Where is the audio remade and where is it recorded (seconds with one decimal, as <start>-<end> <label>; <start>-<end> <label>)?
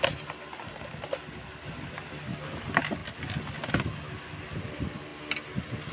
0.0-5.9 recorded